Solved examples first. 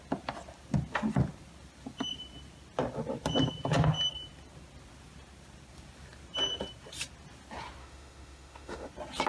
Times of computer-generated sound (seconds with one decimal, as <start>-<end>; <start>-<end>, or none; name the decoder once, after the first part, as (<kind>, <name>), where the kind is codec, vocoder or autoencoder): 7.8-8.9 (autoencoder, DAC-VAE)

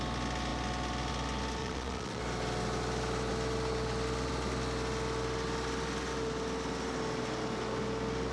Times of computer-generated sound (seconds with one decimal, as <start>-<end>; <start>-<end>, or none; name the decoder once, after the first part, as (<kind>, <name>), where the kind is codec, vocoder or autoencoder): 1.6-2.2 (vocoder, Vocos)

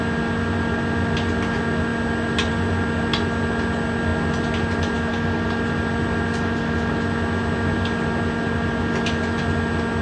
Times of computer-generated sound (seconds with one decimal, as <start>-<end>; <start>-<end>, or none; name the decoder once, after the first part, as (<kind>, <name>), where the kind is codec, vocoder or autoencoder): none

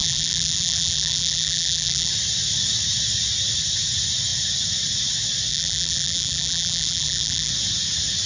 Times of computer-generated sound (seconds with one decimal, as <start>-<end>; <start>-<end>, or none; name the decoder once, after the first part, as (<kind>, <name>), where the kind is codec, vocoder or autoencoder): 0.0-2.1 (vocoder, BigVGAN v2); 5.5-7.5